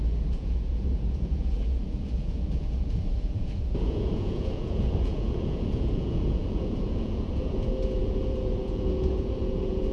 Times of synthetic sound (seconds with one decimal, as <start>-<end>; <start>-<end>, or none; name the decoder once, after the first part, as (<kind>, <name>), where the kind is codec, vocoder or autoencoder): 0.0-9.9 (vocoder, Vocos)